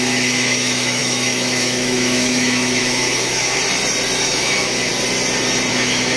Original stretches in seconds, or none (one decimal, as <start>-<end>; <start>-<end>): 3.6-4.2; 4.9-5.7